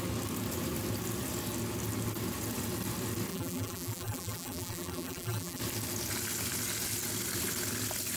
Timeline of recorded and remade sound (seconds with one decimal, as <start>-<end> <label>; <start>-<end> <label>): 0.0-3.3 recorded; 3.3-5.6 remade; 5.6-8.2 recorded